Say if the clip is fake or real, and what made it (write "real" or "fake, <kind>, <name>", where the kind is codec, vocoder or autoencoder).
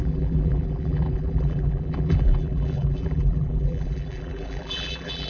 fake, vocoder, BigVGAN v2